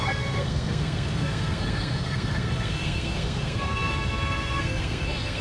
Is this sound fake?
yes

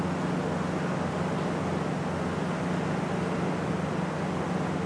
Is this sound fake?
no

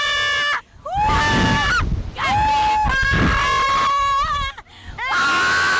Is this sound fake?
no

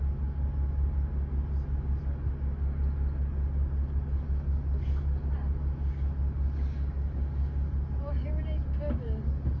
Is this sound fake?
no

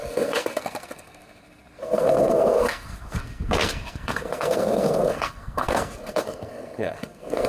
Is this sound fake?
yes